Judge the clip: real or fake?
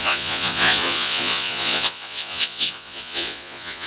fake